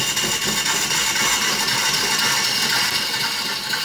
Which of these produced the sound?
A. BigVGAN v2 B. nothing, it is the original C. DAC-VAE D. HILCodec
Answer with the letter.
B